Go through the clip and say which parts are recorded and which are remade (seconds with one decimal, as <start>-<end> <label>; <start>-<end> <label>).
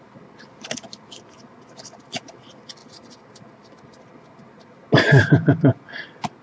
0.0-6.4 recorded